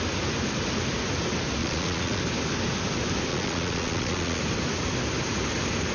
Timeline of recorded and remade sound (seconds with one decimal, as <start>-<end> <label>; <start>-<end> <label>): 0.0-1.6 recorded; 1.6-2.2 remade; 2.2-3.3 recorded; 3.3-4.4 remade; 4.4-5.9 recorded